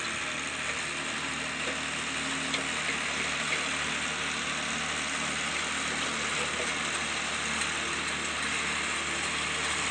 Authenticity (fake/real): real